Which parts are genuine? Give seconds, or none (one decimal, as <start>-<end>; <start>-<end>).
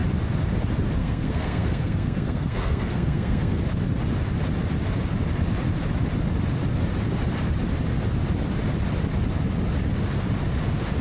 0.0-1.0; 3.6-11.0